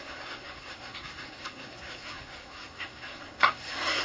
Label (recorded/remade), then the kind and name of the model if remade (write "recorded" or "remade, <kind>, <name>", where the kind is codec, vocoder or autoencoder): remade, codec, SNAC